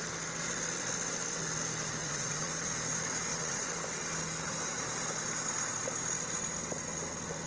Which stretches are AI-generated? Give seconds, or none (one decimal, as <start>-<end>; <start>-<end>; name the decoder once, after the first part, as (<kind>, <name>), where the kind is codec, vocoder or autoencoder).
2.0-2.5 (vocoder, WaveNeXt); 3.3-3.8